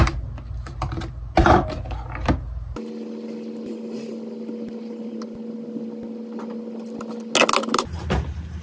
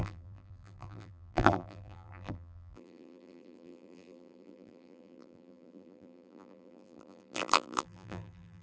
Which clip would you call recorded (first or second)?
first